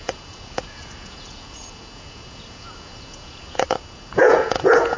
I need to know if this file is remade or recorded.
remade